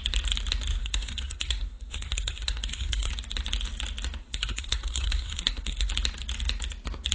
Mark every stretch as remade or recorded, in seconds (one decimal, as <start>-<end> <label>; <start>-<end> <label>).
0.0-0.8 recorded; 0.8-3.1 remade; 3.1-4.2 recorded; 4.2-5.9 remade; 5.9-7.1 recorded